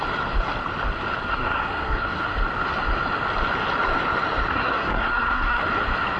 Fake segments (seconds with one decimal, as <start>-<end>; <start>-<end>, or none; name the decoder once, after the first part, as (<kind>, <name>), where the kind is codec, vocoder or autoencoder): 1.2-2.2 (codec, SNAC); 4.5-5.6